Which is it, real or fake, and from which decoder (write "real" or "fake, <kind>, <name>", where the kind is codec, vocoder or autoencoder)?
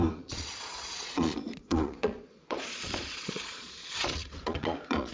fake, vocoder, Vocos